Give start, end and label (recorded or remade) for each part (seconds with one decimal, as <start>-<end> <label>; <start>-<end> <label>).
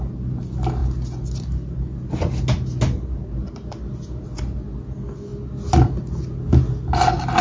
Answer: 0.0-7.4 recorded